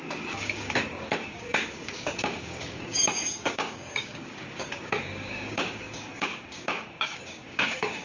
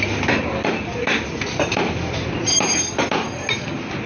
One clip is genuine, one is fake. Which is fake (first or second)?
first